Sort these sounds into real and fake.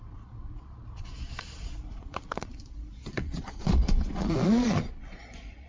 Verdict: fake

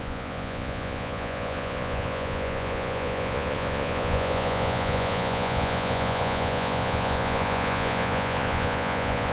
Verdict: fake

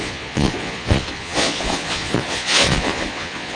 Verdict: fake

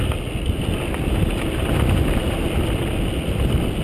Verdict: real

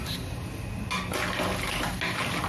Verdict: real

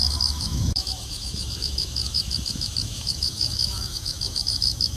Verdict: fake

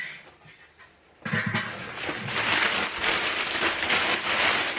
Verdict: real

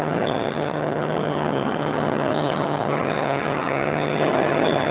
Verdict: fake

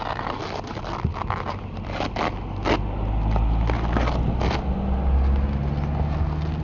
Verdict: real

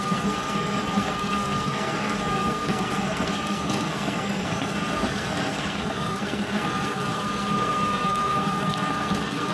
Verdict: fake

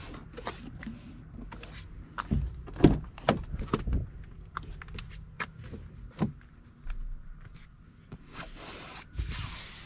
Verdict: real